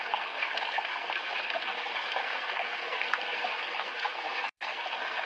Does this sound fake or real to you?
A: fake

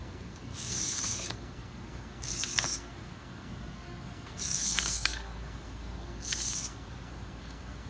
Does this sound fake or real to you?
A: fake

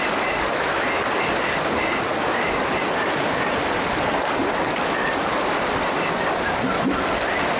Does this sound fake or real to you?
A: real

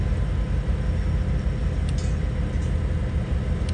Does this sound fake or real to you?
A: real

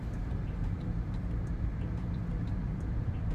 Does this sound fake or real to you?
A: fake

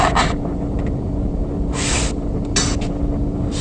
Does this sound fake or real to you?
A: real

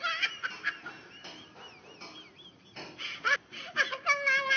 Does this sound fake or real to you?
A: real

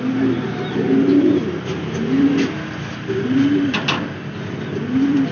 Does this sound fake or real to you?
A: real